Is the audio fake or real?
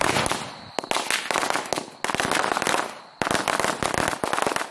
real